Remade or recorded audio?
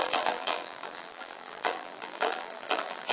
remade